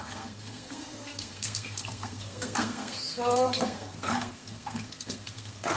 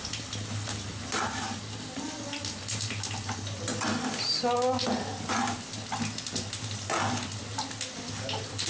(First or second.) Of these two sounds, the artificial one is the first